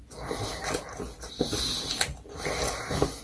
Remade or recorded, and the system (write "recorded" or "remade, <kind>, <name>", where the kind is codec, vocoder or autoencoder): recorded